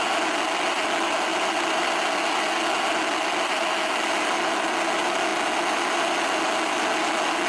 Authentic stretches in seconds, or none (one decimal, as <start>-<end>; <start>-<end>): 0.0-7.5